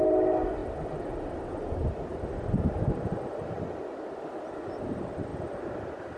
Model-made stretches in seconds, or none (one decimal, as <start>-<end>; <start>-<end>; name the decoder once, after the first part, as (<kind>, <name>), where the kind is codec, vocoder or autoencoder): 2.1-4.1 (vocoder, BigVGAN v2); 5.3-6.2